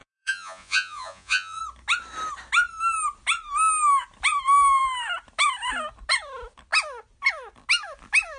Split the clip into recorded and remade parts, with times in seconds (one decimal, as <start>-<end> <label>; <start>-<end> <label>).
0.0-1.6 remade; 1.6-8.4 recorded